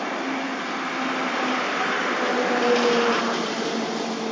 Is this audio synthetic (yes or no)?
no